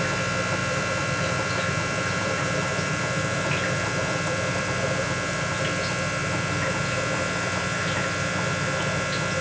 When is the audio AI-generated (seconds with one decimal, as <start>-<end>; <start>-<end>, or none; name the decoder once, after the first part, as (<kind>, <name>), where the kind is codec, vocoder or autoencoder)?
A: 0.6-5.6 (vocoder, BigVGAN v2); 6.2-6.8